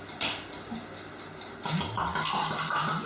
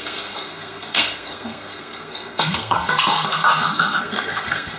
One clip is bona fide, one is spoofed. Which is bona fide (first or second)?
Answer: first